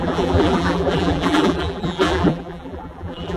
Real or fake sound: fake